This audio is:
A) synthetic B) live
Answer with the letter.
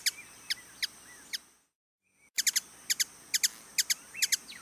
B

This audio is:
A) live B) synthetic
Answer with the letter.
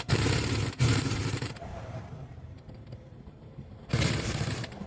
B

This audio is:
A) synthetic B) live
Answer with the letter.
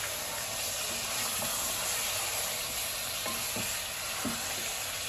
B